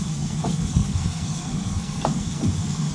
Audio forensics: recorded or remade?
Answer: remade